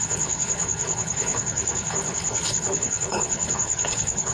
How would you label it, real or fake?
fake